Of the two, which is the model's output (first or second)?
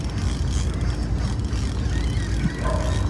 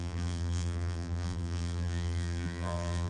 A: second